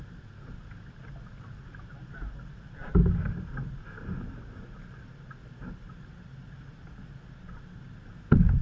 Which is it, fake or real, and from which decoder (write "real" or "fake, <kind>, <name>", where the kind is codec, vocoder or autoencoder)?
real